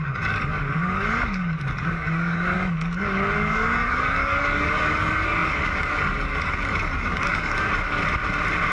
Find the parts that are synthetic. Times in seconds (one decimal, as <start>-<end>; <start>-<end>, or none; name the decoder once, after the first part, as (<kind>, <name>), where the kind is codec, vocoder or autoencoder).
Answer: 0.0-8.0 (codec, DAC)